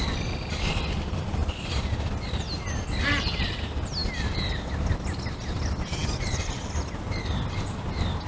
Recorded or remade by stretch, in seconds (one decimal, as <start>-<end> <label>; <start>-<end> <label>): 0.0-1.4 recorded; 1.4-2.1 remade; 2.1-4.0 recorded; 4.0-4.9 remade; 4.9-8.3 recorded

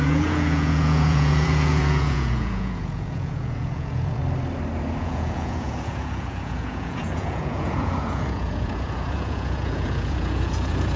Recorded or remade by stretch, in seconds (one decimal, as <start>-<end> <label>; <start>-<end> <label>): 0.0-4.2 remade; 4.2-5.0 recorded; 5.0-11.0 remade

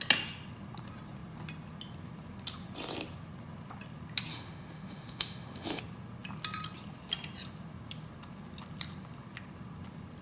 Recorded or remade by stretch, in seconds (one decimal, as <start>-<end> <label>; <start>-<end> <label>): 0.0-4.3 recorded; 4.3-5.8 remade; 5.8-10.2 recorded

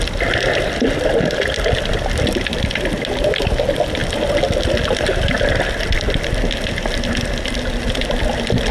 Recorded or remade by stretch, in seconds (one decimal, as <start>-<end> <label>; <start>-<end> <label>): 0.0-8.7 recorded

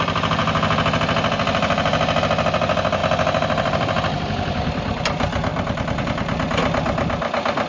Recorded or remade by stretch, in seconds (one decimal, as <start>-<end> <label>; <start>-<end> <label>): 0.0-3.0 recorded; 3.0-5.0 remade; 5.0-5.5 recorded; 5.5-6.0 remade; 6.0-7.7 recorded

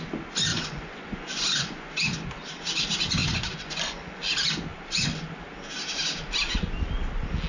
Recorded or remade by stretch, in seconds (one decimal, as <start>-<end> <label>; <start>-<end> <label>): 0.0-0.5 recorded; 0.5-2.0 remade; 2.0-3.2 recorded; 3.2-4.3 remade; 4.3-7.5 recorded

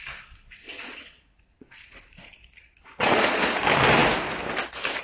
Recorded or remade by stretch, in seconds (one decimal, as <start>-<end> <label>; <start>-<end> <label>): 0.0-0.6 recorded; 0.6-3.6 remade; 3.6-5.0 recorded